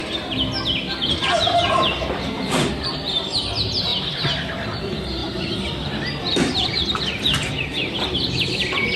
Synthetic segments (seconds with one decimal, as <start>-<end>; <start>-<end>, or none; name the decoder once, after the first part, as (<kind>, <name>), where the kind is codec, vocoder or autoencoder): 0.9-9.0 (vocoder, BigVGAN v2)